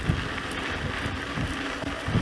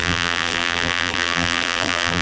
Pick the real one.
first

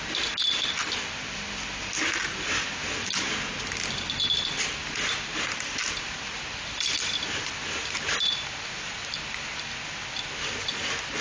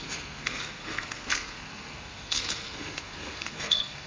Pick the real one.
first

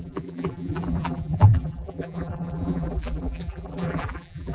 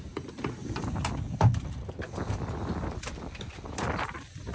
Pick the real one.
second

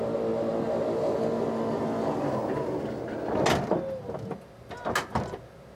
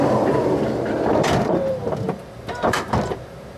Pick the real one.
first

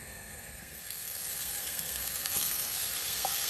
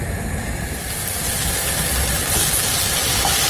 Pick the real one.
second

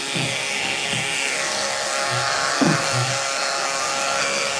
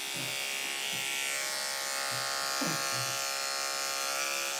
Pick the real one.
second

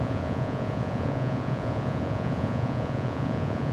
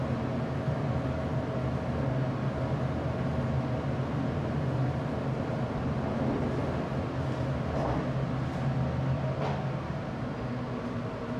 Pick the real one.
second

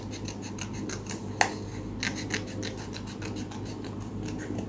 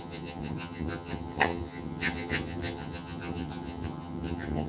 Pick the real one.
first